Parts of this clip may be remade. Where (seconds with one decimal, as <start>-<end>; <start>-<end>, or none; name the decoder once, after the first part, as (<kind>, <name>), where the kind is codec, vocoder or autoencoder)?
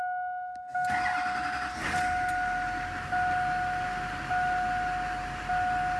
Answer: none